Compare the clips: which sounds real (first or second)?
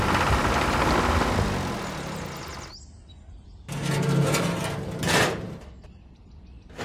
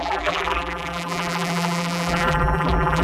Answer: first